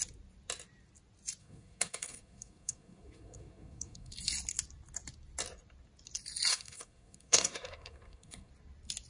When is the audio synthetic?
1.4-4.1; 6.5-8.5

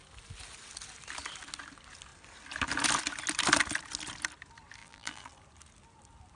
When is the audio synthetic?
4.8-5.3

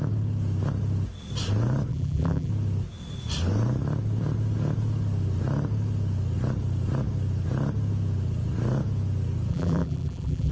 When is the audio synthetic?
1.9-2.5; 9.5-10.5

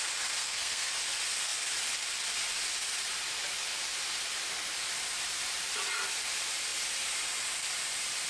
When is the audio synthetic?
0.4-0.9